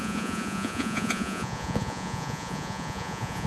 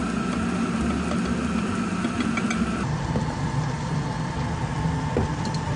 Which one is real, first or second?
second